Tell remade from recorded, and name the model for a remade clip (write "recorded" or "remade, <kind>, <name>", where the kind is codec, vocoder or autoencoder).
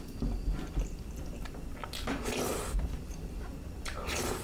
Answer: recorded